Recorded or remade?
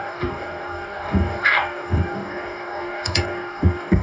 remade